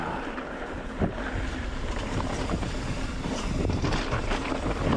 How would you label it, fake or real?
real